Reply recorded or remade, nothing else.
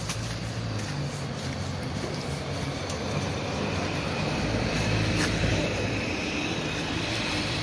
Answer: remade